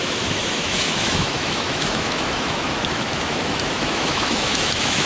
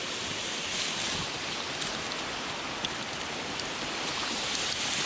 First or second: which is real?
second